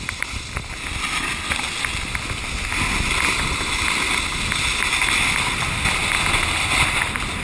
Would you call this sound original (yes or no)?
yes